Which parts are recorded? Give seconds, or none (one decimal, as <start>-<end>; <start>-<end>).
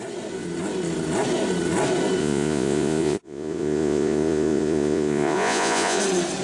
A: 0.0-2.2; 6.0-6.4